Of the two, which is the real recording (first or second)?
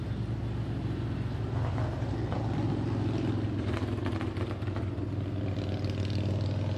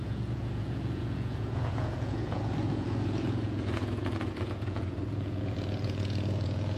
first